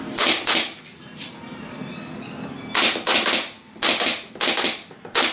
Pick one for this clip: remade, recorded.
recorded